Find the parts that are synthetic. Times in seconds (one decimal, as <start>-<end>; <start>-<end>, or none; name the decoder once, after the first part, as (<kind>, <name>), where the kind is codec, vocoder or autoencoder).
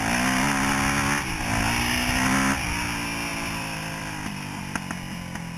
3.3-4.9 (vocoder, BigVGAN v2)